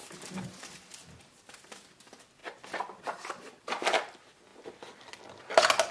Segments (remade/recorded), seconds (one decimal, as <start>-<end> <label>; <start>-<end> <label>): 0.0-5.9 recorded